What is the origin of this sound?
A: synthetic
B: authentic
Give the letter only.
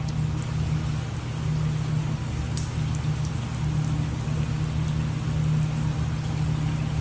B